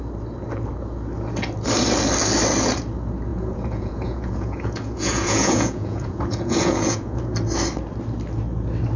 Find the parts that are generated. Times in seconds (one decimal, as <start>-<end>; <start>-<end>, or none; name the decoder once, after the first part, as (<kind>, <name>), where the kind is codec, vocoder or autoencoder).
3.3-7.2 (vocoder, Vocos)